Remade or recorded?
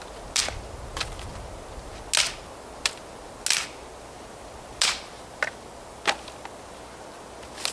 recorded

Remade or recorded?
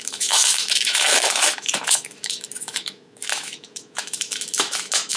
remade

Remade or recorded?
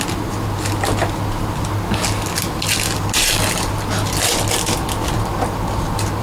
recorded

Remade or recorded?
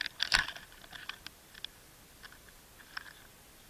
recorded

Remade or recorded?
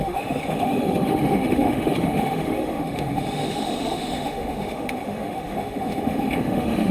remade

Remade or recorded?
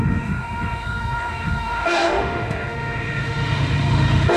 remade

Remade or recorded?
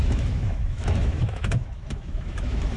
remade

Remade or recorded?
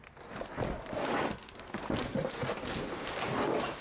recorded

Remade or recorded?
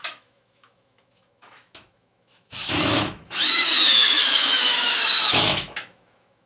remade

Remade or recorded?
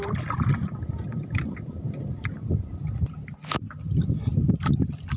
recorded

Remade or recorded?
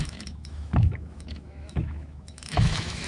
remade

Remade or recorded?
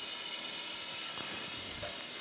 recorded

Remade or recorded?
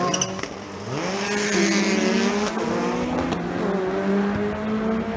recorded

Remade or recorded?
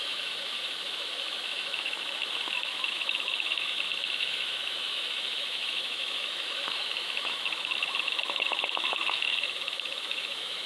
remade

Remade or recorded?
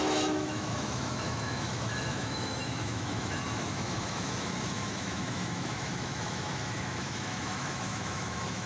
remade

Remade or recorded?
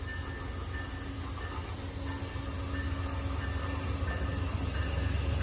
recorded